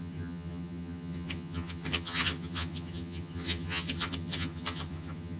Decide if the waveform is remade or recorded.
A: remade